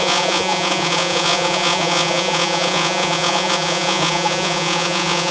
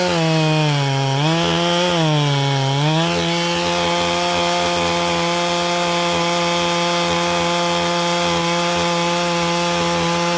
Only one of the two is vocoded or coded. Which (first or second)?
first